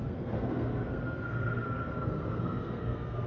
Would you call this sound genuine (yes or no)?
no